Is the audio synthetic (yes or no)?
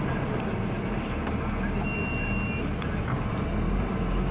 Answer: no